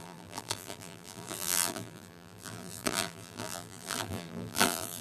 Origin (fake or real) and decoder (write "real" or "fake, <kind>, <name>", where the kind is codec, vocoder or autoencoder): fake, vocoder, BigVGAN v2